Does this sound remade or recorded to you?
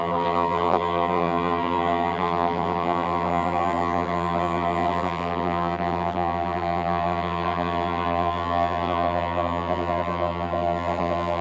remade